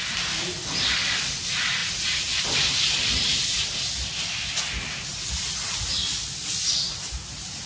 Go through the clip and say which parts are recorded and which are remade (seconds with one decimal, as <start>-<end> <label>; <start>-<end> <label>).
0.0-1.8 recorded; 1.8-2.4 remade; 2.4-7.7 recorded